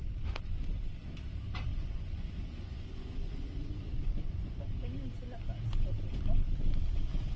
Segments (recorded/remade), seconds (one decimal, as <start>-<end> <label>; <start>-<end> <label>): 0.0-1.7 recorded; 1.7-4.6 remade; 4.6-7.4 recorded